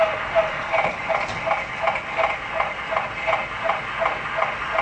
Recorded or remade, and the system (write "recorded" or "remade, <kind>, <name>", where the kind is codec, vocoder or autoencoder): recorded